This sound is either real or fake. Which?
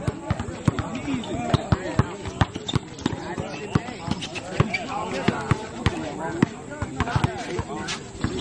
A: real